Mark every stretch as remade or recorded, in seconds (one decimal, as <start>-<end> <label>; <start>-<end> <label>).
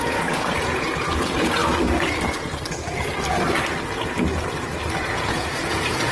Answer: 0.0-1.6 remade; 1.6-5.0 recorded; 5.0-6.1 remade